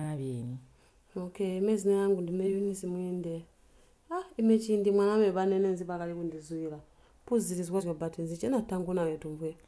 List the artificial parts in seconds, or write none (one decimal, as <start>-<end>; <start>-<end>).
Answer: 0.9-3.6; 7.8-9.7